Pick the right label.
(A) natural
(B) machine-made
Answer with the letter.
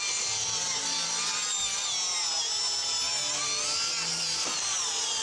A